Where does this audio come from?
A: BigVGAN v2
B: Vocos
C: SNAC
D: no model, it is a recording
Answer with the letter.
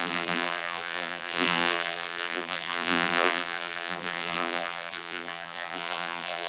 A